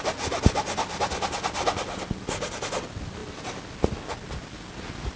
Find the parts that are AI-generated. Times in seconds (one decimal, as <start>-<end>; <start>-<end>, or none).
none